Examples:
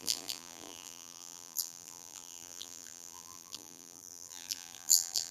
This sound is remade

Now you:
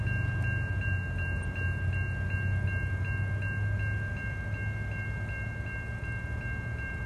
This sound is recorded